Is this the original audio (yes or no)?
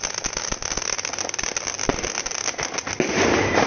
yes